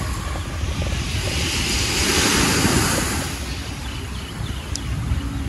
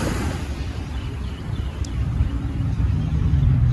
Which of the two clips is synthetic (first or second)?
second